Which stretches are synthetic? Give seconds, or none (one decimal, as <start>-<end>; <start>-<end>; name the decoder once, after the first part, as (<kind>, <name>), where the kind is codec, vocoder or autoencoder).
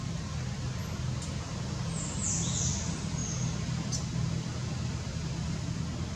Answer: none